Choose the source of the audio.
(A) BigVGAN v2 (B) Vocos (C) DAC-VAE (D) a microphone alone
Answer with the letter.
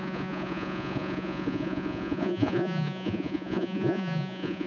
B